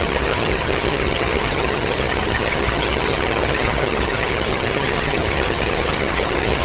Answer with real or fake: fake